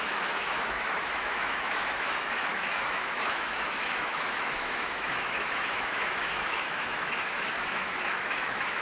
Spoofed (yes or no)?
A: yes